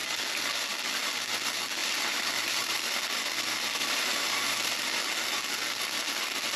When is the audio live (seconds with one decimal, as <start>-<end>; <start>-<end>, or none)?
0.0-1.8; 3.0-3.8; 5.0-6.6